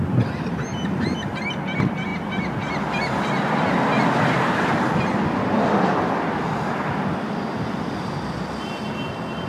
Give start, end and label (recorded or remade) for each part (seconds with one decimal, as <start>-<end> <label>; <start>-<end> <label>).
0.0-9.5 recorded